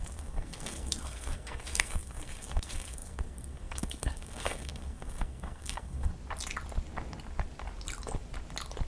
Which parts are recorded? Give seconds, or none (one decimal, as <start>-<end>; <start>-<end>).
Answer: 6.1-8.9